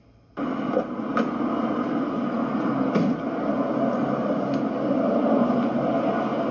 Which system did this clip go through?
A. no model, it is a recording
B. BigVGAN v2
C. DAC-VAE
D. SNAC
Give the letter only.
A